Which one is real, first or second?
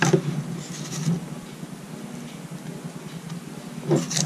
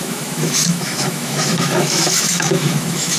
first